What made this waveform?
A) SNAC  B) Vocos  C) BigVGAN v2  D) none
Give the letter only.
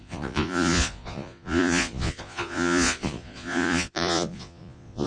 B